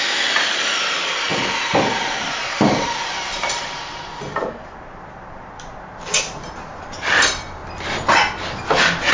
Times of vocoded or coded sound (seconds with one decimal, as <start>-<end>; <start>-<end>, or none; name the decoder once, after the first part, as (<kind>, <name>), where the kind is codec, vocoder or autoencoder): 0.0-4.1 (vocoder, BigVGAN v2); 4.9-7.6